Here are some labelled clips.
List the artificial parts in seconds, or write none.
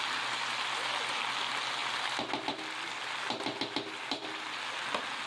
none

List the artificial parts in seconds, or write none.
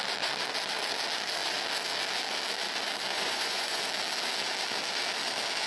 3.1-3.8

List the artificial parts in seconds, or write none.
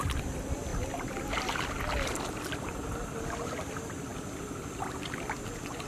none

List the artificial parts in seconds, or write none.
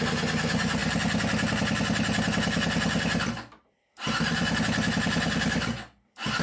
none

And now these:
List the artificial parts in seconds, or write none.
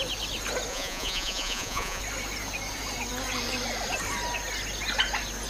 0.7-2.0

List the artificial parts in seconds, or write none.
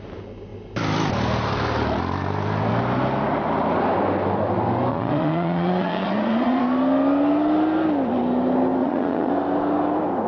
4.9-6.6; 8.8-9.3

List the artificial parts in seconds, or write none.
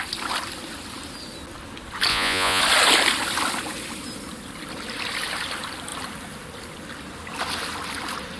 2.1-2.6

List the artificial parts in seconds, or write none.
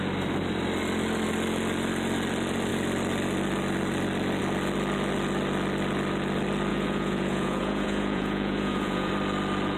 6.7-9.1